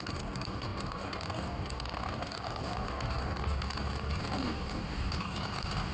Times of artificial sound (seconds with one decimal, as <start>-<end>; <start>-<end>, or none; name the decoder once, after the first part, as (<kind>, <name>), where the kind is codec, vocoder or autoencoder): 0.0-5.9 (codec, DAC)